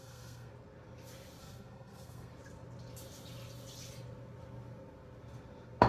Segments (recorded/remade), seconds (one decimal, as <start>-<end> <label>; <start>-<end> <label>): 0.0-0.5 remade; 0.5-1.4 recorded; 1.4-2.3 remade; 2.3-5.9 recorded